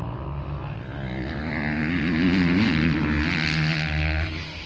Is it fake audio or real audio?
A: real